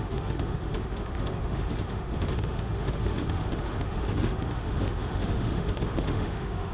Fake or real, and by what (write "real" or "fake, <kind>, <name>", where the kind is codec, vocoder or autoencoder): fake, autoencoder, DAC-VAE